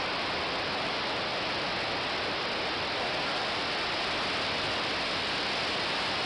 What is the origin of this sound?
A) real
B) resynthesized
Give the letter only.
A